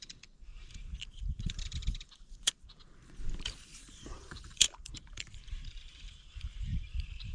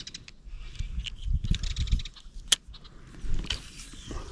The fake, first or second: first